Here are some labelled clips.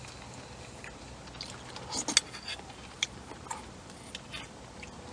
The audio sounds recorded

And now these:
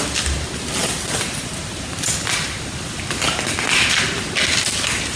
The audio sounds recorded